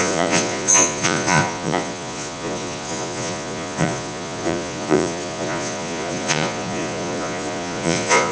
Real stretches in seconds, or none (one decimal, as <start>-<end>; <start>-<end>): none